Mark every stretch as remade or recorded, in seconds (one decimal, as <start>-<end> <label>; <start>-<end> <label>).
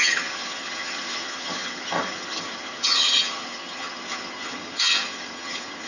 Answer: 0.0-5.9 remade